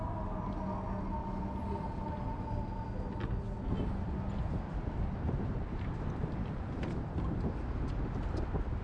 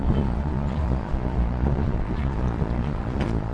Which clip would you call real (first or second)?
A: first